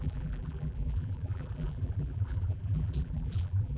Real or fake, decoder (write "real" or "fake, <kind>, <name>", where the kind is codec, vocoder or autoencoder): fake, vocoder, BigVGAN v2